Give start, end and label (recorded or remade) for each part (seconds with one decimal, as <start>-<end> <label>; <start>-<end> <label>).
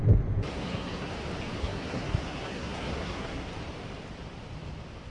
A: 0.0-0.5 recorded; 0.5-1.1 remade; 1.1-1.6 recorded; 1.6-3.5 remade; 3.5-5.1 recorded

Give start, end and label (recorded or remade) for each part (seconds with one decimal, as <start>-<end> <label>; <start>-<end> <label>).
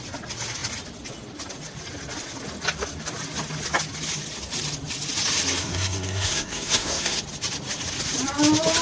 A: 0.0-5.6 recorded; 5.6-7.2 remade; 7.2-8.8 recorded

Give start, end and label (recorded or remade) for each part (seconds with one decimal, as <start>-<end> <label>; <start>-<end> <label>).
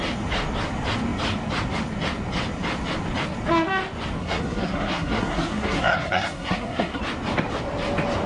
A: 0.0-4.2 recorded; 4.2-7.0 remade; 7.0-8.3 recorded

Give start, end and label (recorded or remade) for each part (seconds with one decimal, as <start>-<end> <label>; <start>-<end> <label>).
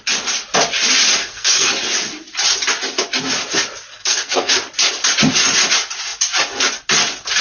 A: 0.0-1.2 recorded; 1.2-1.7 remade; 1.7-3.9 recorded; 3.9-4.5 remade; 4.5-7.4 recorded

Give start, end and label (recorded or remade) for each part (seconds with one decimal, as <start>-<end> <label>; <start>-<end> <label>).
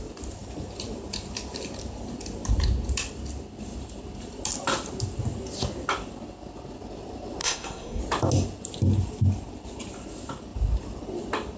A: 0.0-7.4 recorded; 7.4-8.0 remade; 8.0-11.6 recorded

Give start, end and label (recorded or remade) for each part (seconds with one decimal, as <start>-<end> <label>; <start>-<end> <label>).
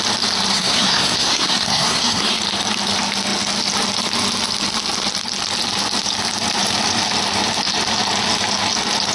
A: 0.0-0.5 recorded; 0.5-2.4 remade; 2.4-9.1 recorded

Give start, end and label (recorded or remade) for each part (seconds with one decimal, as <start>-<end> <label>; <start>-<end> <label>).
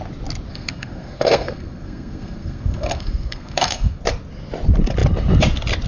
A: 0.0-0.5 recorded; 0.5-4.0 remade; 4.0-5.9 recorded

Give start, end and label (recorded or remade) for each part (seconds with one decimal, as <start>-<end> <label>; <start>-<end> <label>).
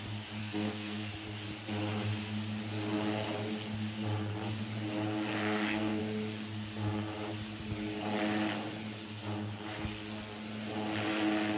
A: 0.0-0.4 recorded; 0.4-1.1 remade; 1.1-5.3 recorded; 5.3-6.0 remade; 6.0-11.6 recorded